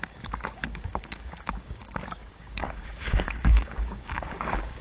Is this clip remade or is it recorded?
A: remade